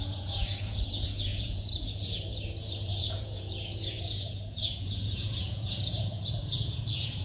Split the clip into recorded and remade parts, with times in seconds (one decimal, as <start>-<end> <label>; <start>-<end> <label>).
0.0-7.2 remade